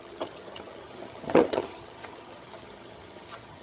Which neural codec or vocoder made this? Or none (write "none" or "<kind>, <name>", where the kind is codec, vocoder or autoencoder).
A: vocoder, HiFi-GAN